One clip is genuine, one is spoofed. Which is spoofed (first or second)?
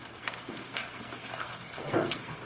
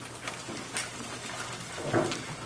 first